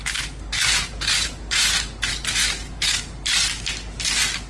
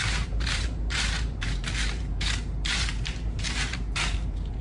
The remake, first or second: second